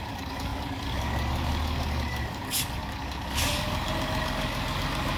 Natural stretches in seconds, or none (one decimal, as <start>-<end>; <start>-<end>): none